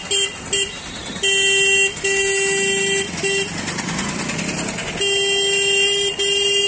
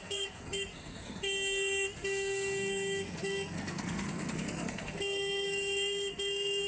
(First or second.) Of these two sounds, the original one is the first